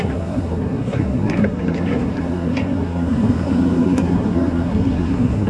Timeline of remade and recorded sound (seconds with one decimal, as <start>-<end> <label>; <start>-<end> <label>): 0.0-5.5 remade